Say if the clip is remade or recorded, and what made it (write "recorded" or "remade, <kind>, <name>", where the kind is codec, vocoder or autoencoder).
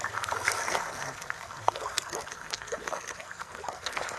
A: remade, codec, SNAC